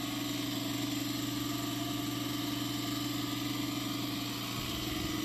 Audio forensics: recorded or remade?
recorded